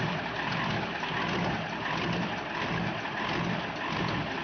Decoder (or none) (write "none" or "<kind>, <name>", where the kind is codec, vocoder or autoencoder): none